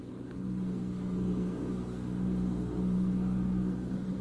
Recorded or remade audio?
remade